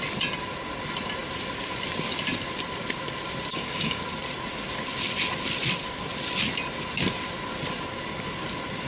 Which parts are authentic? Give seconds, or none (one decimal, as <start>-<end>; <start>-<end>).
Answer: 0.0-3.5; 4.0-8.9